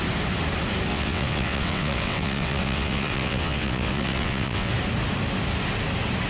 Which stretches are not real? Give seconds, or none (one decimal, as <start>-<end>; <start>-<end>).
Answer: 0.9-4.7